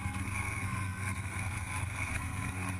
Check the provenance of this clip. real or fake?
fake